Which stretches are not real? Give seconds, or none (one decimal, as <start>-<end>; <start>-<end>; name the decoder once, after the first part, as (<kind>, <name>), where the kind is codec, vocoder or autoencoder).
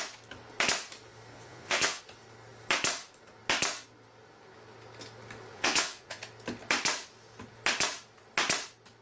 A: 1.3-2.0 (vocoder, Vocos); 5.5-6.2